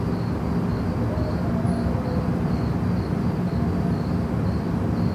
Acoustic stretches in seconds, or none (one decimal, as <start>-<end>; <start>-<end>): 0.0-5.1

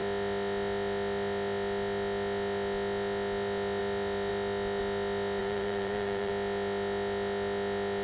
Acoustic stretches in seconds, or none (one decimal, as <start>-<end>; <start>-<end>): 0.0-5.4; 6.3-8.0

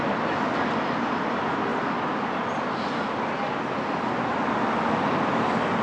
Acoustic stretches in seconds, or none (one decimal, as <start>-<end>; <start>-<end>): 0.0-5.8

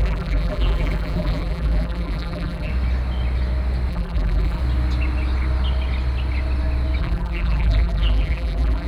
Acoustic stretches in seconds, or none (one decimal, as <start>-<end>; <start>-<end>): 2.7-3.9; 4.6-7.0

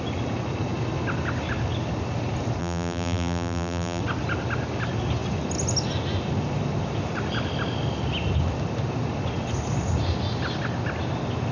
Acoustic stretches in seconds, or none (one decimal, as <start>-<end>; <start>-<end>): 0.0-2.6; 4.0-11.5

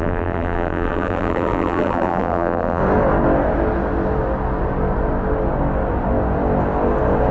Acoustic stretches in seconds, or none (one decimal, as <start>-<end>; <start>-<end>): 2.8-7.3